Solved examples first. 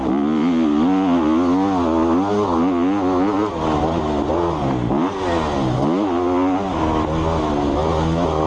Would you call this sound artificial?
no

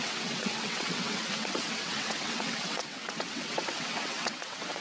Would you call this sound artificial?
yes